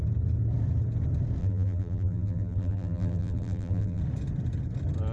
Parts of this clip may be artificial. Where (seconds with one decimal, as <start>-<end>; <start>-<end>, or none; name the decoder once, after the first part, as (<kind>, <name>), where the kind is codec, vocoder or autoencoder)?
1.4-4.0 (vocoder, BigVGAN v2)